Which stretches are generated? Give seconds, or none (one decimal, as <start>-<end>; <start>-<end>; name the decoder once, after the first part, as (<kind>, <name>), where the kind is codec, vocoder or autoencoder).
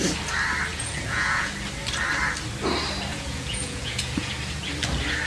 0.7-1.5 (vocoder, Vocos); 3.1-4.3